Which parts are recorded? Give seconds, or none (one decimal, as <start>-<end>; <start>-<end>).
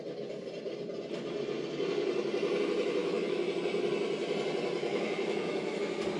0.0-3.0; 3.5-4.8; 5.8-6.2